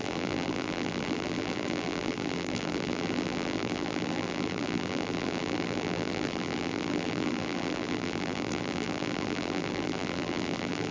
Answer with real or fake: fake